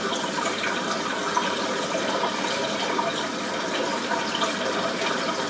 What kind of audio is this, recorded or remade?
recorded